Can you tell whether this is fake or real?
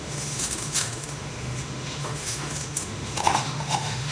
fake